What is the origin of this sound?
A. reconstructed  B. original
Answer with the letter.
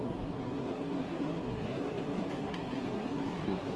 A